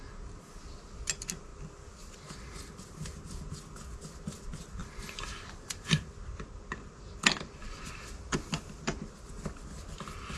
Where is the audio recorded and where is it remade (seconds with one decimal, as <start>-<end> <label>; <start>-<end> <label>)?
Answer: 0.0-10.4 recorded